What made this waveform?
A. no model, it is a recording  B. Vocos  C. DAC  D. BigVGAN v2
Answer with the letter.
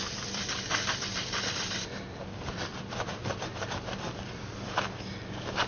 D